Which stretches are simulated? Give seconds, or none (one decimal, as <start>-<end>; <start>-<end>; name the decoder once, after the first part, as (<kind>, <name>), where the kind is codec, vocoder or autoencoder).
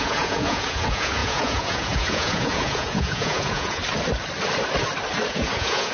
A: 0.0-3.8 (vocoder, Vocos); 5.3-5.9